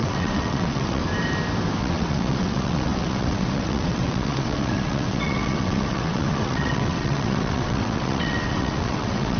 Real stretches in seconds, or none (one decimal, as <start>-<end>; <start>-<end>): 1.0-1.8